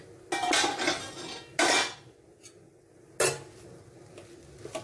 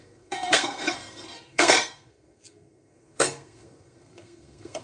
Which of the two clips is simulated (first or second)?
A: second